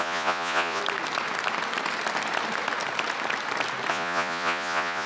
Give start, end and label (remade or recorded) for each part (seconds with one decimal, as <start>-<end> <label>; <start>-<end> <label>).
0.0-0.8 remade; 0.8-3.9 recorded; 3.9-5.1 remade

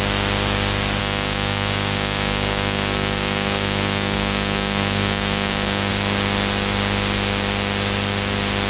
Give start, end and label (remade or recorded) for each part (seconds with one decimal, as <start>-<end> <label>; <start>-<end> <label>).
0.0-1.0 recorded; 1.0-5.9 remade; 5.9-8.7 recorded

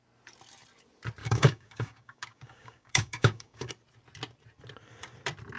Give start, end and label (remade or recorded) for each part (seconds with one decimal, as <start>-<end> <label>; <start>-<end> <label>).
0.0-1.2 recorded; 1.2-3.7 remade; 3.7-5.6 recorded